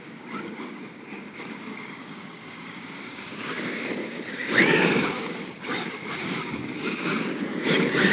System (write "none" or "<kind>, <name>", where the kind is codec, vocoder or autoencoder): codec, DAC